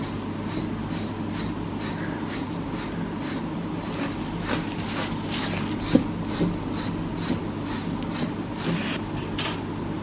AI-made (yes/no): no